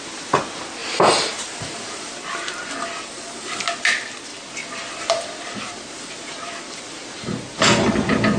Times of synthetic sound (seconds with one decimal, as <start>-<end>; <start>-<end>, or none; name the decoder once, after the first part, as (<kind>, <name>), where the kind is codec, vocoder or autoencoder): 0.8-3.6 (vocoder, BigVGAN v2); 4.3-7.9